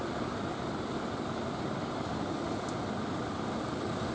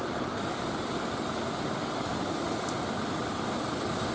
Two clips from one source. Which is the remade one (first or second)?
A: second